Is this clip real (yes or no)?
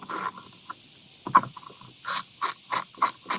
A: yes